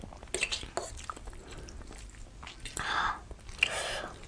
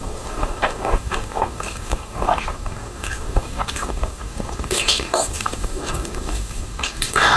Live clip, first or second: first